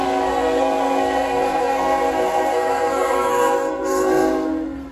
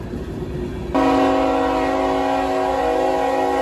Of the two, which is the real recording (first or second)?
second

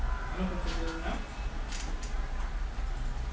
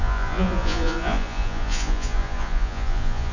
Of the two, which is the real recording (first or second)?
first